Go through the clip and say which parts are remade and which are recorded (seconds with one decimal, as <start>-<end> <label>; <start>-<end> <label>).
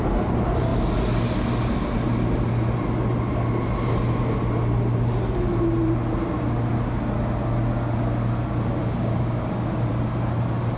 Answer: 0.0-8.8 recorded; 8.8-9.9 remade; 9.9-10.8 recorded